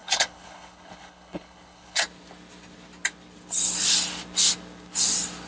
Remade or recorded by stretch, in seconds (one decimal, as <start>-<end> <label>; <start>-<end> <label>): 0.0-2.0 remade; 2.0-5.5 recorded